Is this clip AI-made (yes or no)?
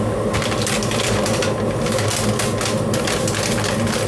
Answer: no